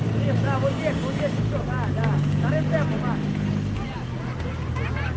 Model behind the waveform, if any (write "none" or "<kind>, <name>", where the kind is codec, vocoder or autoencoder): none